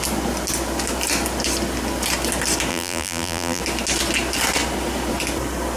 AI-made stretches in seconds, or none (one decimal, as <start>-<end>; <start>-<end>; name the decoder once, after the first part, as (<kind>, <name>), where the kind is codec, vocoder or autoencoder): 2.7-3.6 (vocoder, BigVGAN v2)